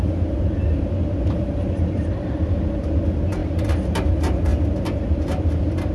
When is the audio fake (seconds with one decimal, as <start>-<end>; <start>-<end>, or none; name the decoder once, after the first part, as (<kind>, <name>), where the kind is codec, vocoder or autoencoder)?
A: none